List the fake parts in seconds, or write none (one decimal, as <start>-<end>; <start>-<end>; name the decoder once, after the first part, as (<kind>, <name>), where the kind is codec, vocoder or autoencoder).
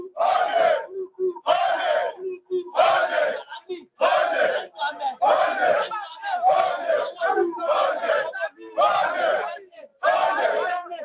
7.6-8.3 (vocoder, BigVGAN v2); 9.9-11.0